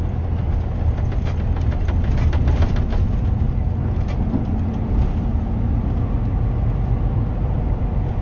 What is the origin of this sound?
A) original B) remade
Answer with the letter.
A